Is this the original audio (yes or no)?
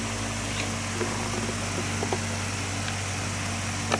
yes